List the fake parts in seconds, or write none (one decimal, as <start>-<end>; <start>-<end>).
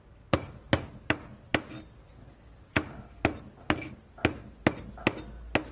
none